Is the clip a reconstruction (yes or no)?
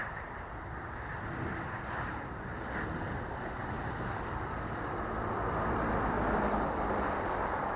no